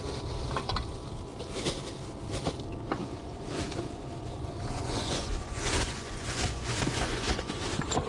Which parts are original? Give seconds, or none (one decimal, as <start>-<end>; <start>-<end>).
0.0-3.0; 7.6-8.1